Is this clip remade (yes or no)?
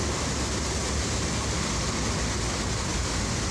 no